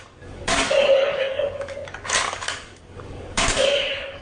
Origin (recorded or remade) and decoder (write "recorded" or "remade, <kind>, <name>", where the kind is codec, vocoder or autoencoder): remade, codec, DAC